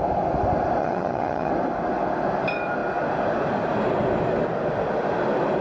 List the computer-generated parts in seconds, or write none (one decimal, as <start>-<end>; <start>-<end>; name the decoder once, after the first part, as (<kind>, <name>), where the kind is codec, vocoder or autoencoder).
0.8-1.5 (vocoder, HiFi-GAN)